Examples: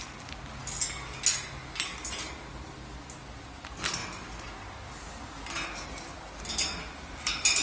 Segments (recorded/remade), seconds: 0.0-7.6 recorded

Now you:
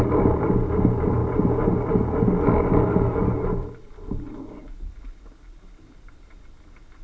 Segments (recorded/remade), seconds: 0.0-7.0 recorded

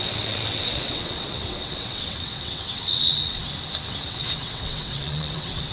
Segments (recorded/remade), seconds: 0.0-3.4 remade; 3.4-4.0 recorded; 4.0-5.7 remade

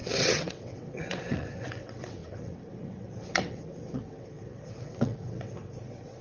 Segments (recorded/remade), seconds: 0.0-6.2 remade

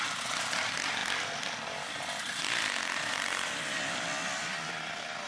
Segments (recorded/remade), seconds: 0.0-5.3 recorded